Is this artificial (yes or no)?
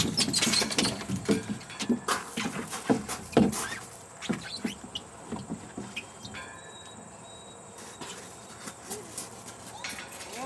no